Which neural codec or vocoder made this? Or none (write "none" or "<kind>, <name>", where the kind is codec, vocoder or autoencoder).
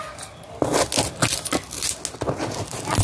none